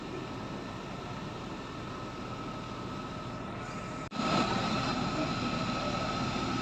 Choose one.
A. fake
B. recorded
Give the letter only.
B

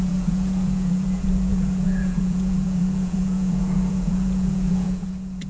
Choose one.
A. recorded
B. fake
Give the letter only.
B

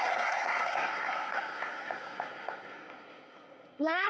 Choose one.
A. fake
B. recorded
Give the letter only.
A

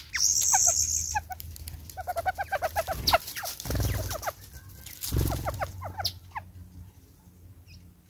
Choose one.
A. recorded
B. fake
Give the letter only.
A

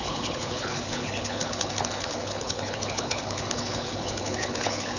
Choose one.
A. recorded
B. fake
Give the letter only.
B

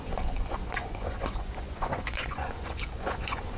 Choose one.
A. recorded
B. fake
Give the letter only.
B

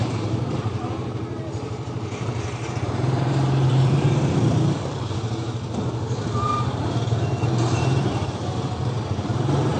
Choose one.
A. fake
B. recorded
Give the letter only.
A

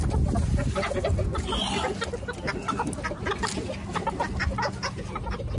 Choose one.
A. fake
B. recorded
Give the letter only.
B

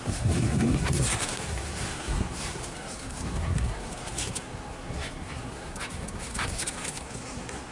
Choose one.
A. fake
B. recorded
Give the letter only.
A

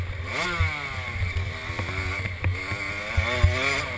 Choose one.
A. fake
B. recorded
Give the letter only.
B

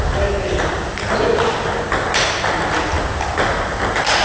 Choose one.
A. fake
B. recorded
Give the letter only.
B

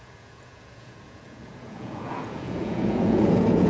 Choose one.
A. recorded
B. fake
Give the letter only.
B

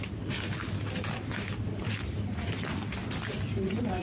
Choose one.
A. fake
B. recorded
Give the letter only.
B